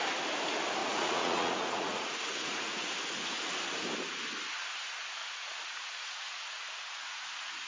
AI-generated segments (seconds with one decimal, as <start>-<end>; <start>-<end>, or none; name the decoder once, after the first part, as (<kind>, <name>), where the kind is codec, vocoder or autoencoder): 0.8-2.9 (vocoder, Vocos); 5.2-7.7